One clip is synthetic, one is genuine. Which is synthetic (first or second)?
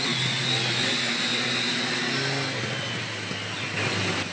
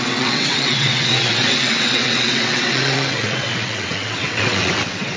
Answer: second